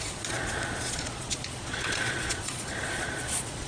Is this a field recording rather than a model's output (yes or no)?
no